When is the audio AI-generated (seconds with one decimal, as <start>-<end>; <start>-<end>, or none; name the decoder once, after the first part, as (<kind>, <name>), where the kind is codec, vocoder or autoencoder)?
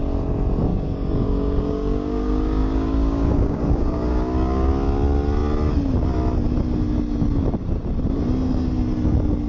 0.7-4.7 (codec, DAC)